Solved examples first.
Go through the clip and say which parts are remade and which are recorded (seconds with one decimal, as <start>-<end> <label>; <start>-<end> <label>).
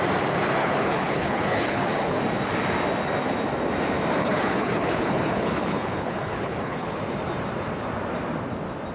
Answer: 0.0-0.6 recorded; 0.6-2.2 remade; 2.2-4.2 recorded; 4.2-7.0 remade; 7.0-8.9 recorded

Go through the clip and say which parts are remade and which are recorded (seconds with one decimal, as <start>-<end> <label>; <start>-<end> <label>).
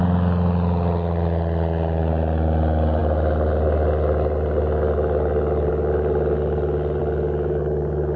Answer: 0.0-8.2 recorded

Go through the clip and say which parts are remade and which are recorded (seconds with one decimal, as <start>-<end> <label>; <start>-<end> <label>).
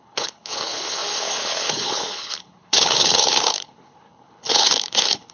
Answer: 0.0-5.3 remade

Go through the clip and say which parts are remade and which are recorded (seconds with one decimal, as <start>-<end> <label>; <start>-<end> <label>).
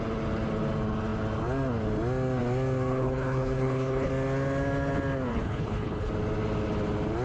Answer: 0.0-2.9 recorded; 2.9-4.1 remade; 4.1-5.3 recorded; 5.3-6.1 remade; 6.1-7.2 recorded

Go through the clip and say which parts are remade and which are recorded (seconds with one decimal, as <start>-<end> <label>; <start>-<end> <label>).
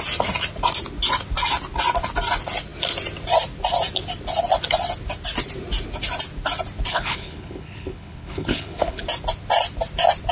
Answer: 0.0-6.9 recorded; 6.9-9.0 remade; 9.0-10.3 recorded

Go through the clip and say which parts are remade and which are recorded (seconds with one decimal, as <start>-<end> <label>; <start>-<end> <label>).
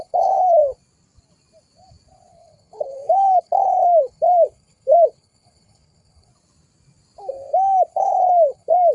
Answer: 0.0-0.6 remade; 0.6-2.3 recorded; 2.3-6.3 remade; 6.3-7.9 recorded; 7.9-8.9 remade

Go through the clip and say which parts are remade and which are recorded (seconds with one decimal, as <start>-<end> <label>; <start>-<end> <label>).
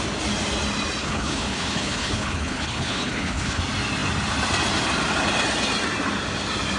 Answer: 0.0-1.0 recorded; 1.0-3.6 remade; 3.6-6.8 recorded